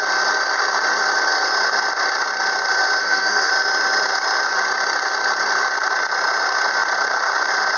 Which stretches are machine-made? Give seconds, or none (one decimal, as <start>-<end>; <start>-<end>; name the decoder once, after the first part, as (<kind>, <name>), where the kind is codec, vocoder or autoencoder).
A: 3.0-3.5 (codec, SNAC)